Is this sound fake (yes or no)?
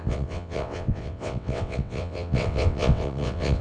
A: yes